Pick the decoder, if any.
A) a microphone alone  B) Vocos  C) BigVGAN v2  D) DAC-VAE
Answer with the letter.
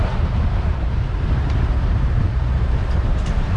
C